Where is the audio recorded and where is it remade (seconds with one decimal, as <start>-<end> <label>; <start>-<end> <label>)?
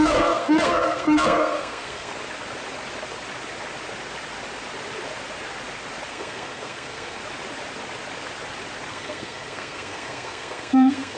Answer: 0.0-2.1 remade; 2.1-6.1 recorded; 6.1-7.2 remade; 7.2-8.9 recorded; 8.9-11.2 remade